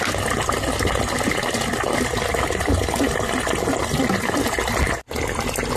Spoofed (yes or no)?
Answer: no